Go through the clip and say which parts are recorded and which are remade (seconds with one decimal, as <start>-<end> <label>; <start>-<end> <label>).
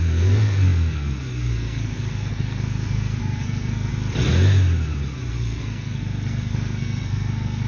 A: 0.0-3.9 remade; 3.9-5.3 recorded; 5.3-7.7 remade